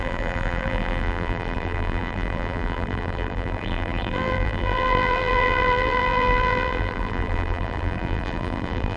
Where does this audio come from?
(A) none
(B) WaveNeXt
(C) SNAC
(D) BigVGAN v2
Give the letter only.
D